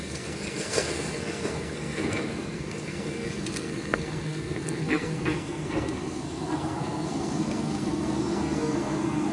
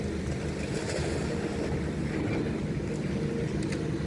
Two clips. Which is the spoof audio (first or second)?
first